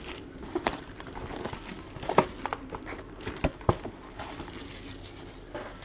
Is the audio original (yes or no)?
yes